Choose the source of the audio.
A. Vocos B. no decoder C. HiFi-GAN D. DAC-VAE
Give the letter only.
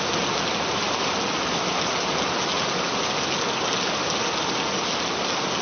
B